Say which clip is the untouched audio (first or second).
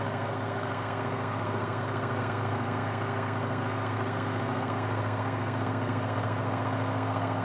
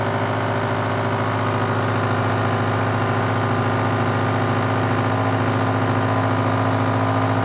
second